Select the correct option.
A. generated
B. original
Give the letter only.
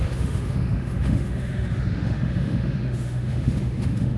A